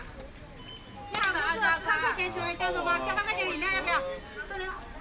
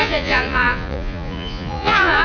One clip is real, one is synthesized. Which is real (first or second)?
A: first